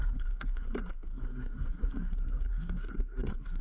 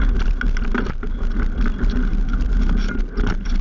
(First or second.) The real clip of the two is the second